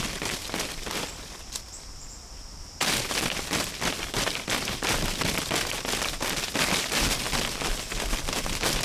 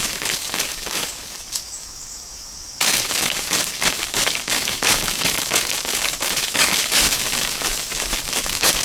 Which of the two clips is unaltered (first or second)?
first